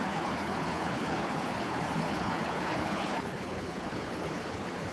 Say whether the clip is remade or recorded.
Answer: remade